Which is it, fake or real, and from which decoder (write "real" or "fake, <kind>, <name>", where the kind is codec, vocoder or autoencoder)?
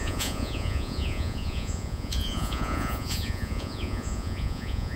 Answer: fake, vocoder, Vocos